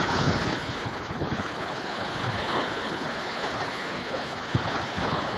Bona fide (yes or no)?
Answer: no